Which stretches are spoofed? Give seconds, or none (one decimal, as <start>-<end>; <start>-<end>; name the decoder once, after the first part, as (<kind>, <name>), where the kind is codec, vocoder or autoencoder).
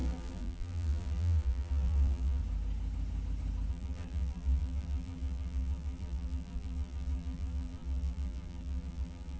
0.0-2.4 (vocoder, BigVGAN v2); 3.7-9.4